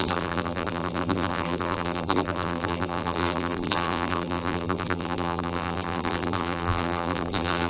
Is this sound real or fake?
fake